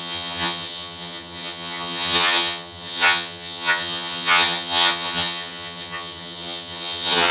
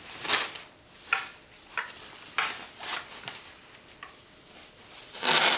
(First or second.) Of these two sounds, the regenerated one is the first